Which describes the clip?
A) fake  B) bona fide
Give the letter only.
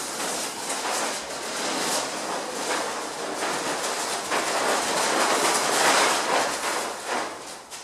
B